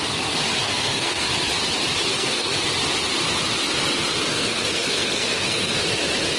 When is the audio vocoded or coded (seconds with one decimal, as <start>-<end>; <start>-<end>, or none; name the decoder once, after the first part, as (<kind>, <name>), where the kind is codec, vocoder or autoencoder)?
0.6-1.3 (codec, SNAC); 2.1-2.6; 4.3-5.8